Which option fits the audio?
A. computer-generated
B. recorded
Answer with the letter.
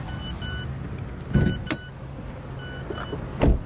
B